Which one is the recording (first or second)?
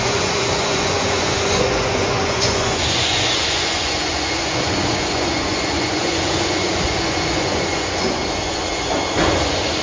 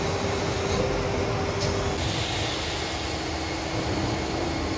second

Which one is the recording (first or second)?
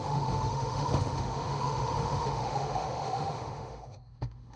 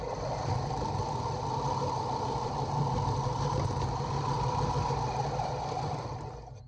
second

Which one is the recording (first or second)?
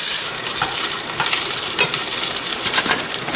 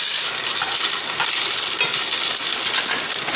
second